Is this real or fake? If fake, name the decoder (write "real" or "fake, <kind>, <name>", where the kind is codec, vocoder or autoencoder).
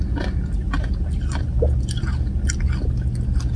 real